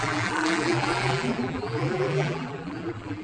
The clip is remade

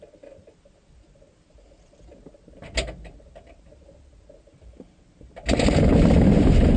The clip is recorded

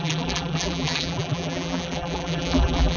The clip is remade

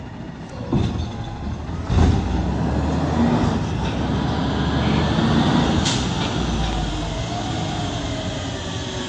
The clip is recorded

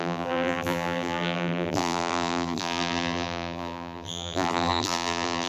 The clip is remade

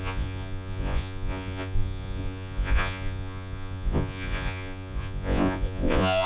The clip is remade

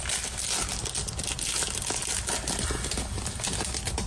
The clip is recorded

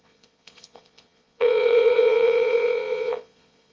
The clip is remade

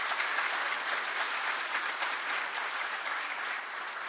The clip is recorded